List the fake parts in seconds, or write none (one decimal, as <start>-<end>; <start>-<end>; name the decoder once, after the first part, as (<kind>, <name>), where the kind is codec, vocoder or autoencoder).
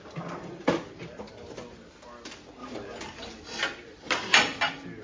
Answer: none